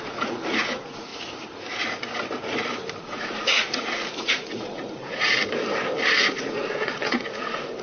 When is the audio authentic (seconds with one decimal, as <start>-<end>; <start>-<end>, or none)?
1.1-3.0; 5.4-6.2